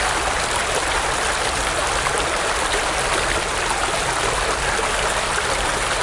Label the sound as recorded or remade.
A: recorded